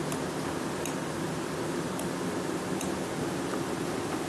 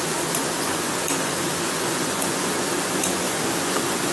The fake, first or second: second